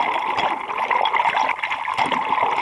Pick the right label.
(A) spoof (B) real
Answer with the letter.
B